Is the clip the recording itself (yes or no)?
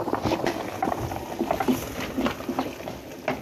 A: yes